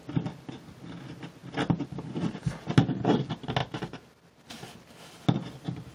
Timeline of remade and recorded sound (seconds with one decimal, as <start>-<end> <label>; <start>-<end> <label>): 0.0-5.9 recorded